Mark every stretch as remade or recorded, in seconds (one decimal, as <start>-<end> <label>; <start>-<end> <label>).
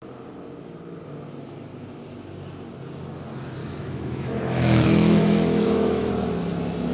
0.0-3.6 recorded; 3.6-6.1 remade; 6.1-6.9 recorded